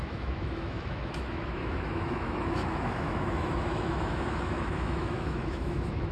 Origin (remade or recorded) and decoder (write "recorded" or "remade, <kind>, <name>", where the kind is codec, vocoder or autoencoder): remade, autoencoder, DAC-VAE